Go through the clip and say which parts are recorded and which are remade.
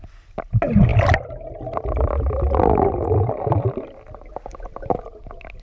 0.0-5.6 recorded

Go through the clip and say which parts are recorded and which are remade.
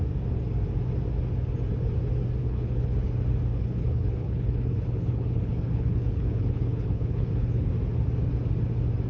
0.0-2.4 recorded; 2.4-3.1 remade; 3.1-3.5 recorded; 3.5-7.7 remade; 7.7-9.1 recorded